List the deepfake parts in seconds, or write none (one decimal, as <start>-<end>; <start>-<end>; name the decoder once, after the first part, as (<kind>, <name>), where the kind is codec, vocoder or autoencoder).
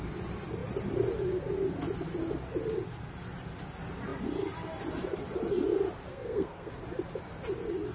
6.1-6.7 (codec, SNAC)